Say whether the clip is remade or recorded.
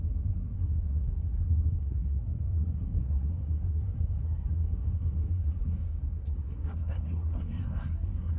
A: remade